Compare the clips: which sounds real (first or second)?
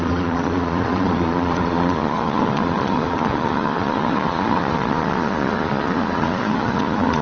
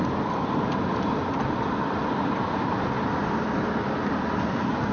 second